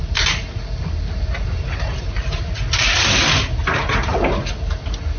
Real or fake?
real